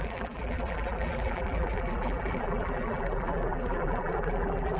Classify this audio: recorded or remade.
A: remade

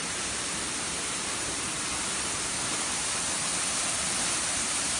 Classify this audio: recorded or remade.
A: remade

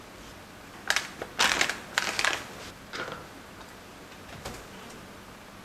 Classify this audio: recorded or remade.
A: recorded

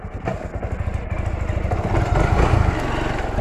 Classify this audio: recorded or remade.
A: recorded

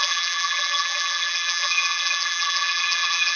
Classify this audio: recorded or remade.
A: remade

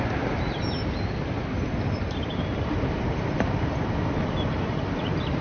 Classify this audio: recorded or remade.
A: remade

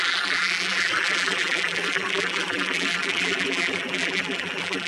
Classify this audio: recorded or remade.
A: remade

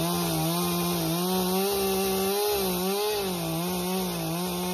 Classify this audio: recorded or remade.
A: recorded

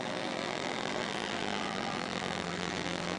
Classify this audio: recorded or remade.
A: remade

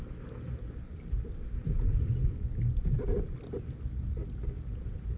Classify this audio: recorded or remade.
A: recorded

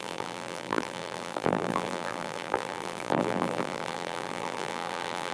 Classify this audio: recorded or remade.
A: remade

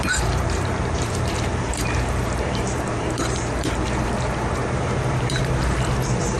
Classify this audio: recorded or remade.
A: remade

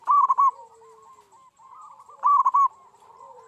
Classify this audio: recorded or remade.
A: recorded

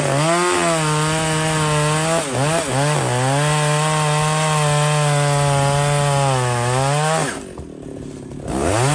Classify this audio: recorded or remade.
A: recorded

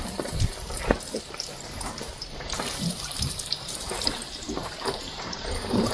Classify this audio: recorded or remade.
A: remade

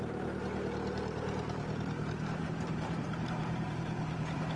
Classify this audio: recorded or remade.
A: remade